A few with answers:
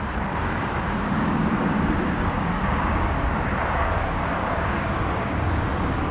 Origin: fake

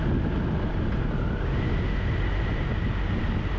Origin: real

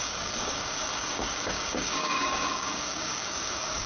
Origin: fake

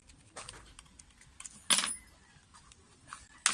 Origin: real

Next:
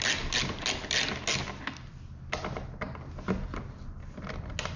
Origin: real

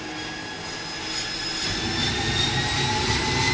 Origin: real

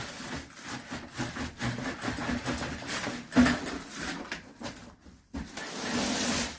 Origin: real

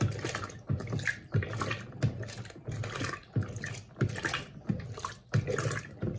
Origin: real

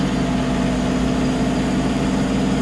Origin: real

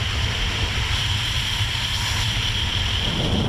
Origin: real